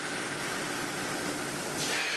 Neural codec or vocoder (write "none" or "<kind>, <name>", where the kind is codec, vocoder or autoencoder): none